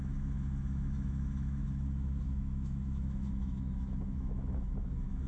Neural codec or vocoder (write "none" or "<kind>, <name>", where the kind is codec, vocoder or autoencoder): autoencoder, DAC-VAE